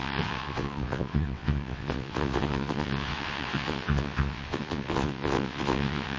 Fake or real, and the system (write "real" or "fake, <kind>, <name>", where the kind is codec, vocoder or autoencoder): fake, vocoder, WaveNeXt